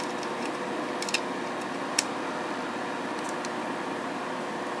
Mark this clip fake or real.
real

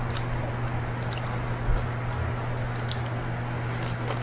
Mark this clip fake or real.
real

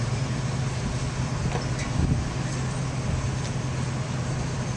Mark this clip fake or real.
real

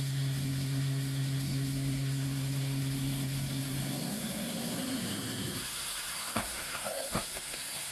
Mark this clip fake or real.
fake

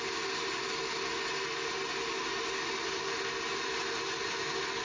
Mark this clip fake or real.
real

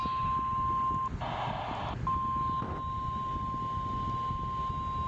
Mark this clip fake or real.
real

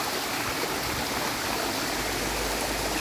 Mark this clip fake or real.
real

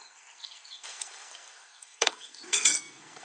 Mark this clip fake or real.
fake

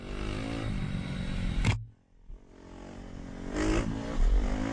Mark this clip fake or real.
real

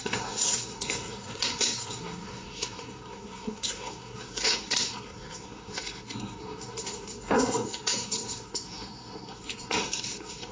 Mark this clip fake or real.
fake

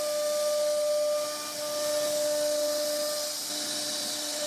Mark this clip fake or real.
real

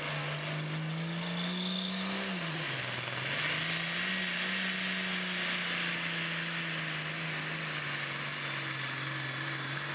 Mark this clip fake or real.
real